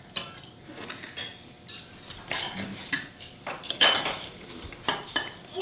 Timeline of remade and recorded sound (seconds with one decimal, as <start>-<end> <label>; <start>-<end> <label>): 0.0-1.3 recorded; 1.3-4.7 remade; 4.7-5.6 recorded